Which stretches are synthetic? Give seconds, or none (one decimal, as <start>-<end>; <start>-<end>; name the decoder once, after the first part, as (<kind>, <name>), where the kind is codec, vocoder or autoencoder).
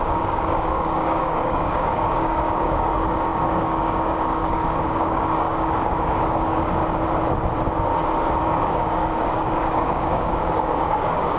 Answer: 0.0-6.8 (codec, DAC); 8.4-11.4